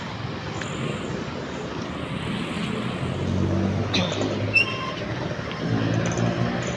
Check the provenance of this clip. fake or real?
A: real